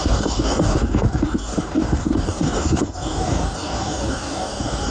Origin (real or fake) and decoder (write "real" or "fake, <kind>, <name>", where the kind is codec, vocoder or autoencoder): fake, codec, DAC